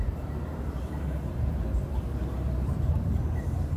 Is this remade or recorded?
remade